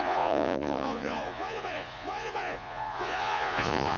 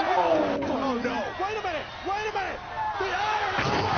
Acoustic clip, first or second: second